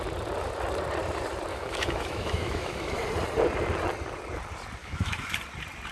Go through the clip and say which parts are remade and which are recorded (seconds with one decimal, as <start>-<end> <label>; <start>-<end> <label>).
0.0-1.5 recorded; 1.5-3.0 remade; 3.0-4.8 recorded; 4.8-5.3 remade; 5.3-5.9 recorded